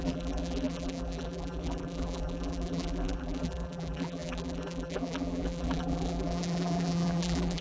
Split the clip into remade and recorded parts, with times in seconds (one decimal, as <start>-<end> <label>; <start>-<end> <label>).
0.0-7.6 remade